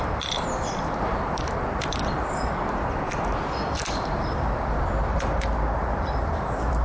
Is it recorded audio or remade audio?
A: remade